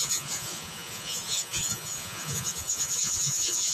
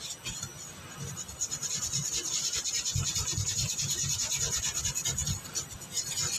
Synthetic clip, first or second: first